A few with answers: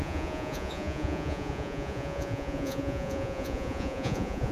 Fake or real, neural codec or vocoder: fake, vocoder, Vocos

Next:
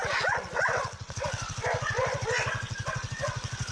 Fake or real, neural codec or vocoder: fake, vocoder, WaveNeXt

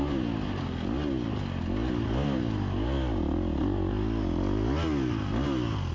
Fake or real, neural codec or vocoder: real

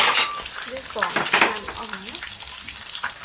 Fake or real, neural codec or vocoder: real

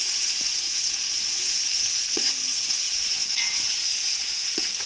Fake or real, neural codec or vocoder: fake, vocoder, Vocos